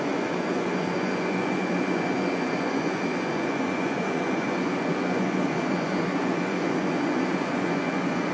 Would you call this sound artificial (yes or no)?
yes